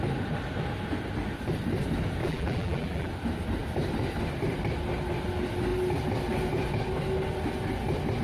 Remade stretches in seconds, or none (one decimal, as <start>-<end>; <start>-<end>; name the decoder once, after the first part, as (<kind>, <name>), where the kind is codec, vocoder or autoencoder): 2.2-3.1 (vocoder, BigVGAN v2)

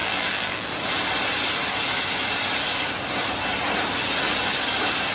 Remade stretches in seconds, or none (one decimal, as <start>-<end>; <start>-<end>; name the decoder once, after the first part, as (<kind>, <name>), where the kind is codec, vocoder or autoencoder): 0.0-0.7 (vocoder, BigVGAN v2)

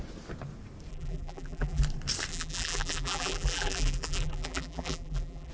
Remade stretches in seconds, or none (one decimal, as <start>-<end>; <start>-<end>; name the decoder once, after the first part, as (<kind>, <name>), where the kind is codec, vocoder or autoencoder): 0.9-1.8 (vocoder, BigVGAN v2); 2.3-5.5

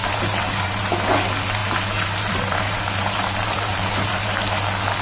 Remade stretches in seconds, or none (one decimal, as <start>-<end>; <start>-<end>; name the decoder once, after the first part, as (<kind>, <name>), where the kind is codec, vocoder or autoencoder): 0.0-1.2 (vocoder, BigVGAN v2); 1.6-4.6

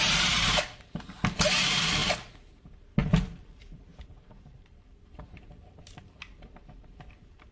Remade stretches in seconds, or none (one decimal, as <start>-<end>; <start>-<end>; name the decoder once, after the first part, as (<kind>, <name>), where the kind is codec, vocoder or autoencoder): 0.0-2.0 (vocoder, BigVGAN v2); 2.6-7.5

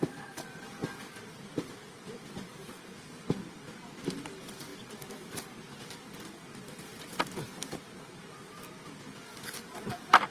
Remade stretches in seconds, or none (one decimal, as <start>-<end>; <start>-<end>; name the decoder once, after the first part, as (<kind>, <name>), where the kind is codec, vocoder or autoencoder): 0.8-2.7 (vocoder, BigVGAN v2); 4.7-5.9